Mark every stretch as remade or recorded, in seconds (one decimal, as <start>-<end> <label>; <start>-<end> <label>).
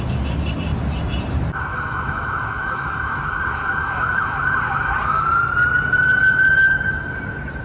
0.0-1.7 recorded; 1.7-3.2 remade; 3.2-3.8 recorded; 3.8-4.4 remade; 4.4-7.6 recorded